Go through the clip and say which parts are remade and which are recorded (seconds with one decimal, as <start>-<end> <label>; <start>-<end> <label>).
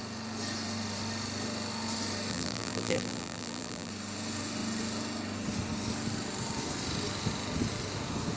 0.0-2.3 recorded; 2.3-3.9 remade; 3.9-8.4 recorded